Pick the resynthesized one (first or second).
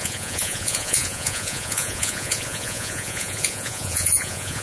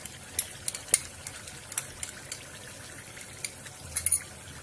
first